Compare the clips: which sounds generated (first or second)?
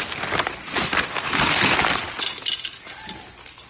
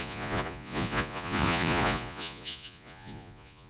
second